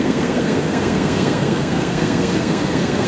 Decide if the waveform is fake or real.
fake